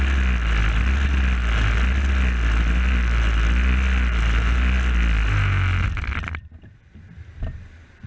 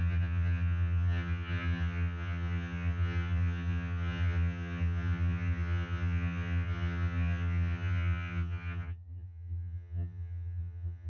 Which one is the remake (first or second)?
second